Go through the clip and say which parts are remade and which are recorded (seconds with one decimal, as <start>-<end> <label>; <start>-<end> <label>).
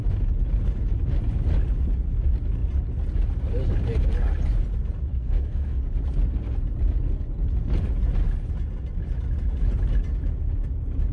0.0-5.1 recorded; 5.1-5.8 remade; 5.8-11.1 recorded